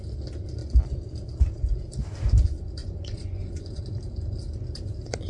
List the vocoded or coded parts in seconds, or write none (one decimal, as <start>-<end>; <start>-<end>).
2.8-3.8